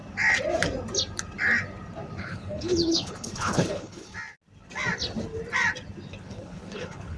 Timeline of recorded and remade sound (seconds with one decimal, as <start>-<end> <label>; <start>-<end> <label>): 0.0-2.2 recorded; 2.2-4.1 remade; 4.1-6.2 recorded; 6.2-7.2 remade

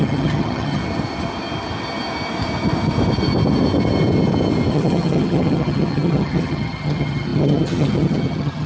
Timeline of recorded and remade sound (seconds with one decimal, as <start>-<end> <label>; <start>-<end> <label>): 0.0-0.8 remade; 0.8-4.7 recorded; 4.7-8.7 remade

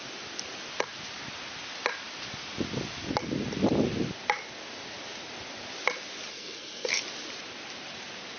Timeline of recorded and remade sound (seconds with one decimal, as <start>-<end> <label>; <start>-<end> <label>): 0.0-6.3 recorded; 6.3-7.0 remade; 7.0-8.4 recorded

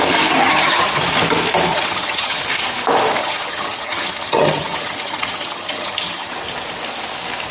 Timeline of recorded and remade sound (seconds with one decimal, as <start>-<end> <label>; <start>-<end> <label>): 0.0-0.4 recorded; 0.4-1.0 remade; 1.0-1.7 recorded; 1.7-2.4 remade; 2.4-3.2 recorded; 3.2-6.3 remade; 6.3-7.5 recorded

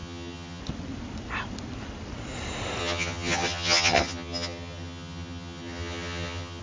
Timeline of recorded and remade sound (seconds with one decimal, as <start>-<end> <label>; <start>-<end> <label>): 0.0-0.6 remade; 0.6-2.8 recorded; 2.8-6.6 remade

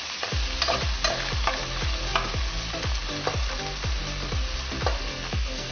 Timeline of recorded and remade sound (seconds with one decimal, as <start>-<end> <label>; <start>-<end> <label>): 0.0-5.0 recorded; 5.0-5.7 remade

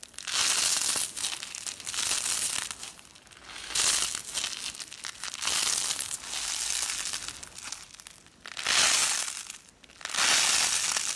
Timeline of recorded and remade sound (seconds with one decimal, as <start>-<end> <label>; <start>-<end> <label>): 0.0-11.2 recorded